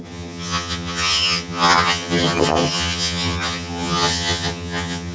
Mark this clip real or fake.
fake